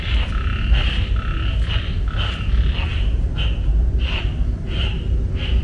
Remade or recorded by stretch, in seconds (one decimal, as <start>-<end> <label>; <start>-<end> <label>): 0.0-5.6 recorded